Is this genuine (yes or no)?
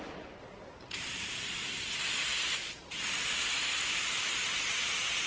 yes